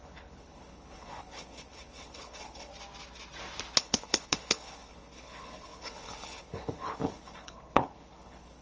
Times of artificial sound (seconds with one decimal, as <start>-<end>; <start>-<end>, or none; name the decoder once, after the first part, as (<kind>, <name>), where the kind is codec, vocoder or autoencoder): 0.0-2.7 (codec, HILCodec); 3.8-8.6